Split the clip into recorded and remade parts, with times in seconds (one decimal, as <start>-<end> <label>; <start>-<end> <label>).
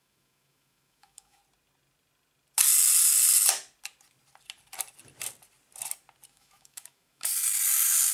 0.0-1.4 remade; 1.4-6.3 recorded; 6.3-7.3 remade; 7.3-8.1 recorded